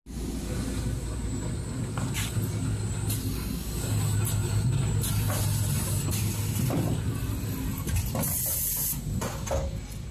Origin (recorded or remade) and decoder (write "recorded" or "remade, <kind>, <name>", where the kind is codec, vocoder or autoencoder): recorded